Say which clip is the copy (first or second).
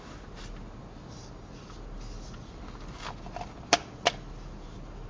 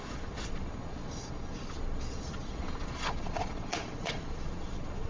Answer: second